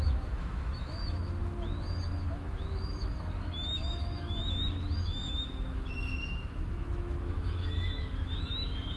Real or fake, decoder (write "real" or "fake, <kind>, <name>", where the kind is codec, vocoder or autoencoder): fake, autoencoder, DAC-VAE